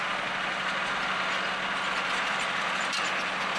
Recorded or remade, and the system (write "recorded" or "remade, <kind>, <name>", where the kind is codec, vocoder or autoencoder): recorded